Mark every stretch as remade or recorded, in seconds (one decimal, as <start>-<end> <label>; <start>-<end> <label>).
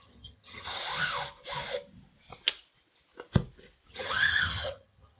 0.0-0.8 remade; 0.8-3.9 recorded; 3.9-5.2 remade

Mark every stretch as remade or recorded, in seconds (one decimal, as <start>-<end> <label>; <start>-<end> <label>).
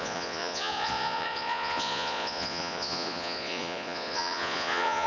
0.0-5.1 remade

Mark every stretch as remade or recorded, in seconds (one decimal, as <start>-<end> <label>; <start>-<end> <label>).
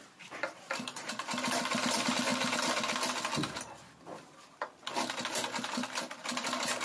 0.0-2.3 remade; 2.3-5.2 recorded; 5.2-6.8 remade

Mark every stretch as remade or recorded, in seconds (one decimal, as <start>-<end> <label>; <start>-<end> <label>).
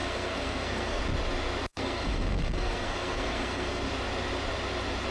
0.0-1.0 remade; 1.0-1.7 recorded; 1.7-3.9 remade; 3.9-5.1 recorded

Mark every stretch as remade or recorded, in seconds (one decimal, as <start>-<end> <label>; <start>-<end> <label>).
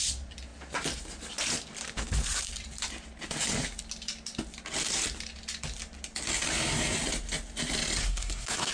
0.0-8.0 recorded; 8.0-8.7 remade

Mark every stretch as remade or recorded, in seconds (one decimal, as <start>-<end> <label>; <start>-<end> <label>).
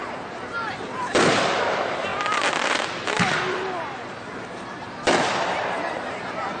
0.0-6.6 remade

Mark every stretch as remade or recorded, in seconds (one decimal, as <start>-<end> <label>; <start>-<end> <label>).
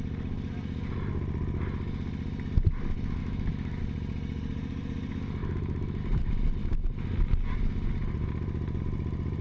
0.0-3.2 recorded; 3.2-3.8 remade; 3.8-5.4 recorded; 5.4-6.0 remade; 6.0-9.4 recorded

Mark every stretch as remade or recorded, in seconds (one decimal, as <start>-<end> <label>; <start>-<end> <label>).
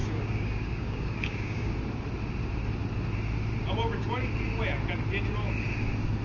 0.0-1.7 remade; 1.7-6.2 recorded